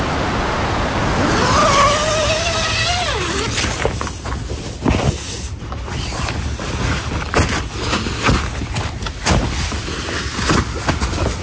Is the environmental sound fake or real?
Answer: real